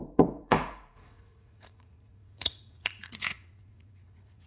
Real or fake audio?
fake